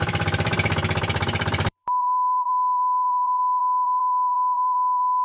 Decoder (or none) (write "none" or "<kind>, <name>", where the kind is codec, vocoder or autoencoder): vocoder, BigVGAN v2